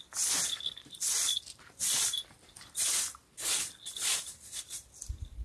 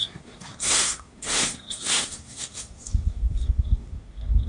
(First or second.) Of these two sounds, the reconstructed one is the second